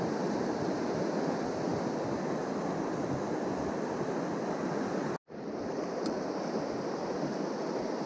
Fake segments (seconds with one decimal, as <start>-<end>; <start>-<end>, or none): none